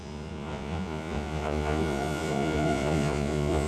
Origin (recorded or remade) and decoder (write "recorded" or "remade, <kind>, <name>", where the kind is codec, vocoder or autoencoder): remade, vocoder, Vocos